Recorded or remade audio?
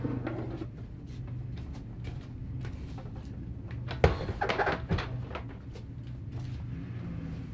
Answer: recorded